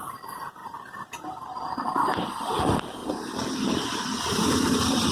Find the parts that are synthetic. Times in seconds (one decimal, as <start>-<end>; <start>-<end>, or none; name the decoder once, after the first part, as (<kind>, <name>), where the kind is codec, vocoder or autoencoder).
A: 3.0-5.1 (vocoder, BigVGAN v2)